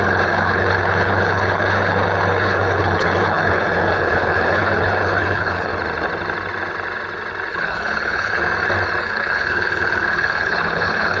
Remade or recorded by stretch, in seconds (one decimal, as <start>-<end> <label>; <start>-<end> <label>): 0.0-5.7 remade; 5.7-7.5 recorded; 7.5-8.4 remade; 8.4-9.0 recorded; 9.0-11.2 remade